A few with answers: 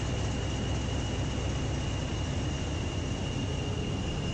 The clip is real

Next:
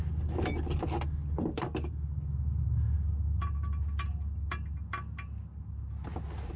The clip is real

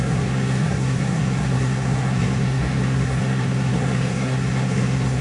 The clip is fake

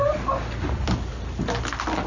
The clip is real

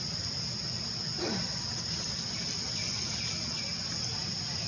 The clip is real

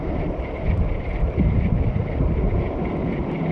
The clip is real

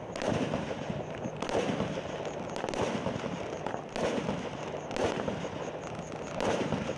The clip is real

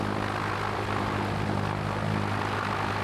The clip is real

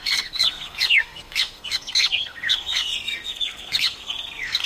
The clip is fake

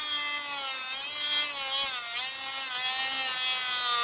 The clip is real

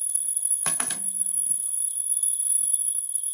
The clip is fake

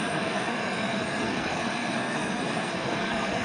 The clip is fake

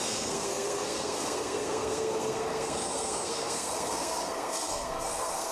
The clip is fake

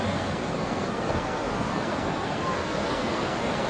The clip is fake